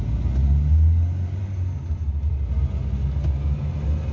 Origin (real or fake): real